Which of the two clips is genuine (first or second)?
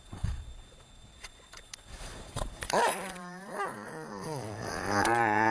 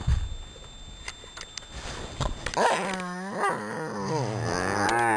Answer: second